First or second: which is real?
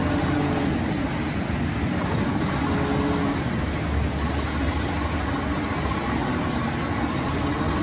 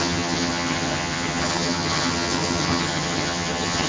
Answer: first